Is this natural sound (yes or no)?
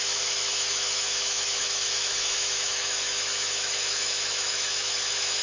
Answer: no